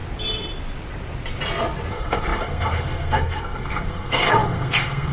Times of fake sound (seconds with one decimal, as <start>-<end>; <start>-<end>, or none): 1.9-5.1